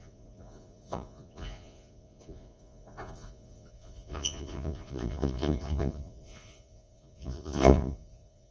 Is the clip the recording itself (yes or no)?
no